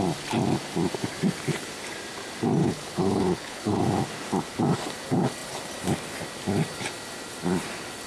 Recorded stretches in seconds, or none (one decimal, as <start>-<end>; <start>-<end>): 0.0-2.6; 3.8-8.1